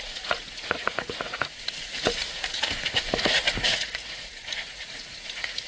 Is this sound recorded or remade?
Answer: remade